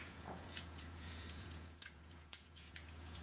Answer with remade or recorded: remade